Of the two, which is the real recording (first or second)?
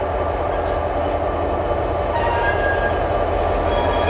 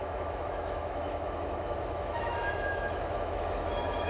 first